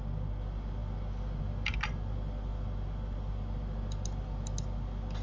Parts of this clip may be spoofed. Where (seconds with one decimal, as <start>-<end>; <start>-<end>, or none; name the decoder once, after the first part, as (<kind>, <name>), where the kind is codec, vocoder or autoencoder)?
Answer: none